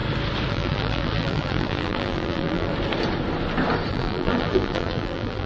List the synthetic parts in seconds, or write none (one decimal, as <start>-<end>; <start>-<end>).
0.5-2.7; 3.9-5.5

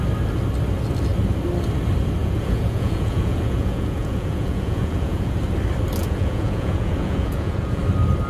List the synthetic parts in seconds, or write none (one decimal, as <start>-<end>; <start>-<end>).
2.2-5.4; 6.0-7.8

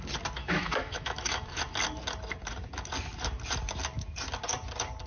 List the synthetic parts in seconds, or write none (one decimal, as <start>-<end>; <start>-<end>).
0.4-1.6

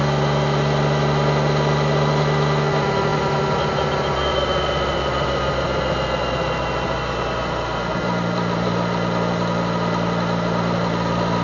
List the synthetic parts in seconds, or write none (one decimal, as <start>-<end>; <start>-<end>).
none

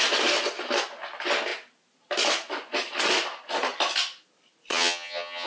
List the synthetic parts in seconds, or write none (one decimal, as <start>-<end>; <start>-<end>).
4.7-5.5

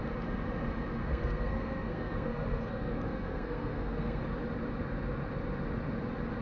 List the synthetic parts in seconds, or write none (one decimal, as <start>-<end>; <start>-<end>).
1.0-4.2

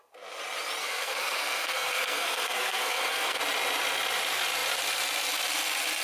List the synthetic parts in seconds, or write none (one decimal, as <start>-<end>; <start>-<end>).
0.8-3.4

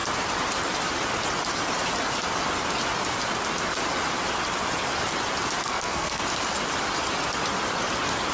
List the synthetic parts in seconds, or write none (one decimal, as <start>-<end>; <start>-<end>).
5.6-6.2